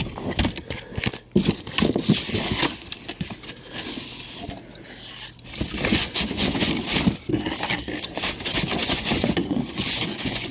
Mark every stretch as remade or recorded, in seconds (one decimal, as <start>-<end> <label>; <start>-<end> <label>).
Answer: 0.0-5.9 recorded; 5.9-6.7 remade; 6.7-8.8 recorded; 8.8-10.5 remade